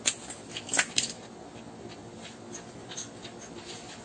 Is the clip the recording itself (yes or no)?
yes